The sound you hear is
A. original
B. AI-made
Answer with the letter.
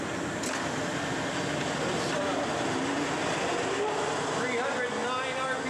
A